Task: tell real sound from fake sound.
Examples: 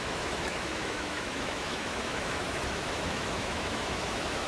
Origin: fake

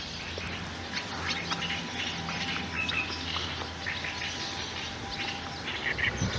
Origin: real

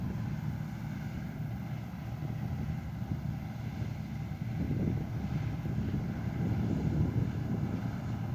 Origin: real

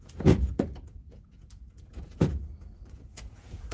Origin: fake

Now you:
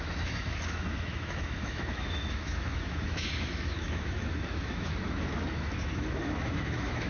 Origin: fake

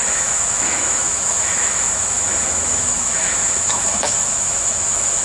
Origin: fake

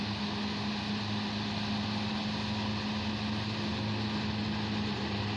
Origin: real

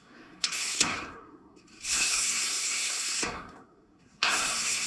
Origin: fake